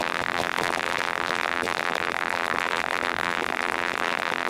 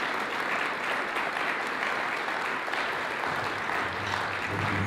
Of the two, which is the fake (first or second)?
first